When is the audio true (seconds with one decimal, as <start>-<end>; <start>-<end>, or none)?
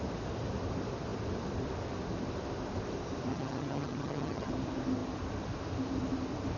0.0-3.3; 4.5-6.6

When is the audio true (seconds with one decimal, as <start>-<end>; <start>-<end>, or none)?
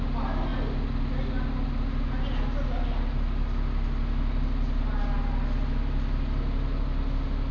0.0-7.5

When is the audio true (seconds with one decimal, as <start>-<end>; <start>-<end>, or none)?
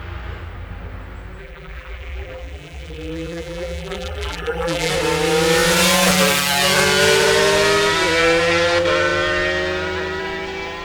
0.0-1.4; 4.9-10.8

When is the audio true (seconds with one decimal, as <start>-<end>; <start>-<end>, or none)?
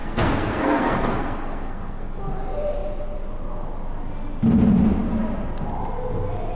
2.2-6.5